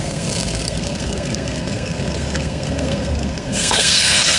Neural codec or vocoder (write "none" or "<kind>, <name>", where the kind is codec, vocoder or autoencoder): codec, SNAC